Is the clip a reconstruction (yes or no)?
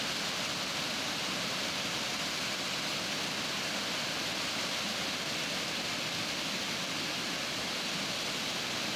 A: no